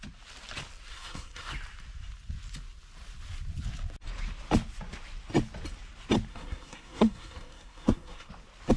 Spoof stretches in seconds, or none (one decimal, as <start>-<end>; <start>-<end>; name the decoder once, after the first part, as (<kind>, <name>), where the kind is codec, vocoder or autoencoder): 0.9-1.5 (codec, SNAC); 6.3-8.3

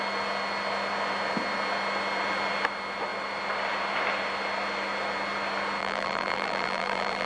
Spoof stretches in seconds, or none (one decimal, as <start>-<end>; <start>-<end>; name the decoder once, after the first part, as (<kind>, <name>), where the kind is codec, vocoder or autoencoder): 5.8-7.3 (vocoder, BigVGAN v2)

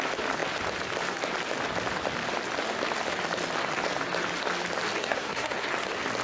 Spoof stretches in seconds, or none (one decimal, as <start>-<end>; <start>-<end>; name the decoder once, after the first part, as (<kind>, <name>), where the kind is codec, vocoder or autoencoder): 5.0-5.6 (codec, SNAC)

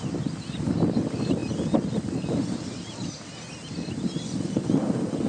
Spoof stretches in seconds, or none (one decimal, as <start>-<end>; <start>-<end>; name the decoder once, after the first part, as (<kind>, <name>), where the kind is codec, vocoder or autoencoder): none

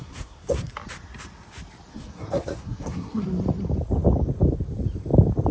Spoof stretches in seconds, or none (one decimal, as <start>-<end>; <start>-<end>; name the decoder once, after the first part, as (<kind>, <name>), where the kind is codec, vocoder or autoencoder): 0.0-0.7 (codec, SNAC); 1.9-3.2